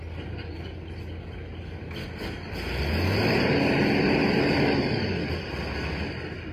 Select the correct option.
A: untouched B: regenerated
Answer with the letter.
A